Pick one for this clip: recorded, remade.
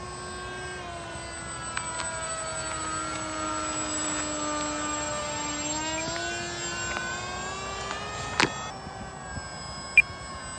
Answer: recorded